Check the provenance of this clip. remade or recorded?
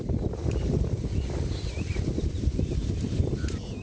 recorded